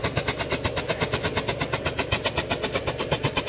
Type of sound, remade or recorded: recorded